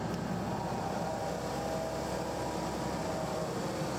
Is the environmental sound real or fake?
real